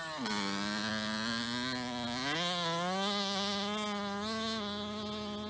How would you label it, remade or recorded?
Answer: recorded